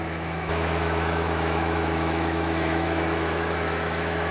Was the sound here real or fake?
fake